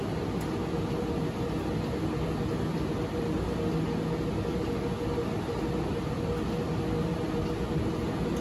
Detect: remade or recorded recorded